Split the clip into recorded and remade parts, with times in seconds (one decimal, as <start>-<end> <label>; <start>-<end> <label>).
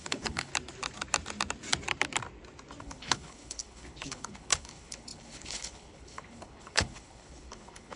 0.0-0.5 remade; 0.5-2.8 recorded; 2.8-8.0 remade